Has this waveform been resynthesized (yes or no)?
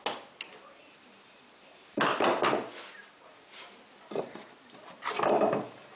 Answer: no